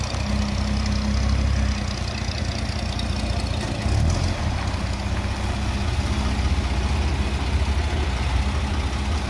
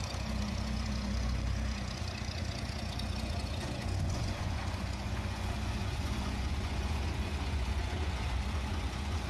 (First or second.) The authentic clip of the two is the first